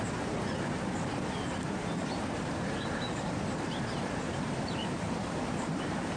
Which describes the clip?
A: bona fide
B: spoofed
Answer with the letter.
B